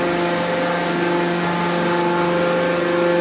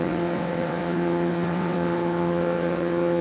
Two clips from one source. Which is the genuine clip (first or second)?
first